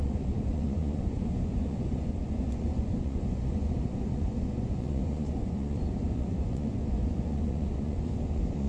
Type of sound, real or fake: fake